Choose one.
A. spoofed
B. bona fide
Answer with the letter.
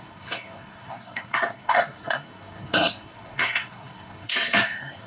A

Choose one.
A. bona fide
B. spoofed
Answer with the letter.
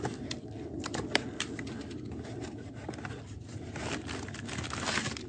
A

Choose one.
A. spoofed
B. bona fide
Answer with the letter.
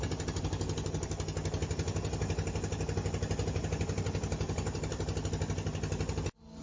B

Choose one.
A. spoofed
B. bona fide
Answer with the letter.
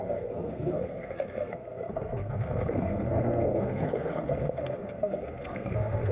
A